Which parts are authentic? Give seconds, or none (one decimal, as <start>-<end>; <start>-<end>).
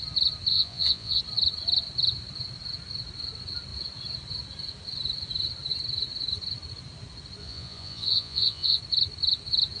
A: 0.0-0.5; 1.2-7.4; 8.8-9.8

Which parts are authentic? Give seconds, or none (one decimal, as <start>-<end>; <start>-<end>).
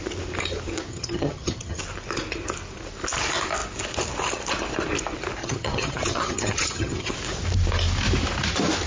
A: 0.0-0.9; 1.8-5.4; 7.1-8.9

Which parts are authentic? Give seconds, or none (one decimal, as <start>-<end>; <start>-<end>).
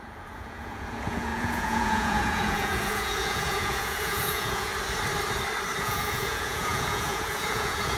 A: 4.7-5.8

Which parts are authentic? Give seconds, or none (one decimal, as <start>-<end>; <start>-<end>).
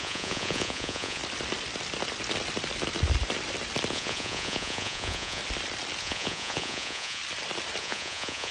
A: 1.2-3.9; 5.4-6.0; 7.2-7.8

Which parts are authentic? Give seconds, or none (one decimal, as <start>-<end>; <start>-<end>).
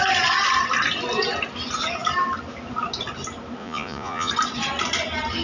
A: 0.0-3.6; 4.3-5.4